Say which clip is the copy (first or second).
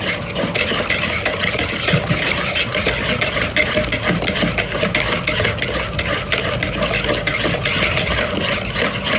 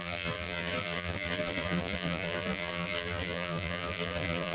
second